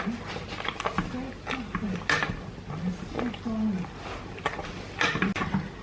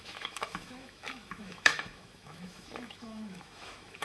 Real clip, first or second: first